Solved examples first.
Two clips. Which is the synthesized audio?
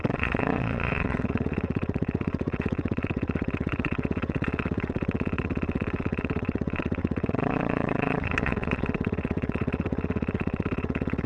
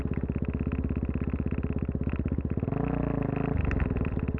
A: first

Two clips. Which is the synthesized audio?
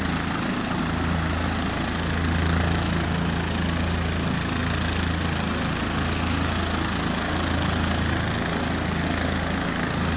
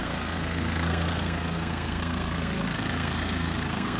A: second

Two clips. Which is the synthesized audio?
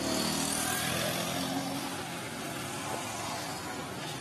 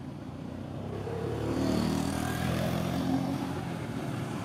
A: second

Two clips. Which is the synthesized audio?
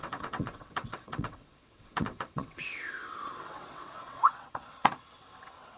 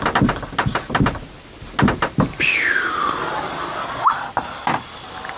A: first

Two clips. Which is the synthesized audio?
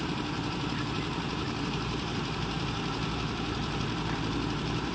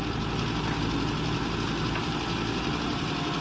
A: first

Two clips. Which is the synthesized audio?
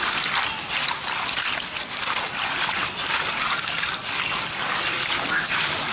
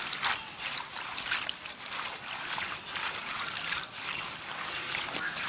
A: second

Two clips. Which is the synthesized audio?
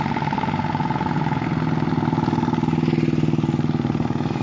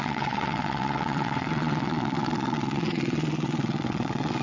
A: second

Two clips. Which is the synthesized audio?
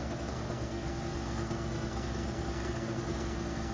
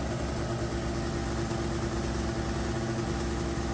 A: first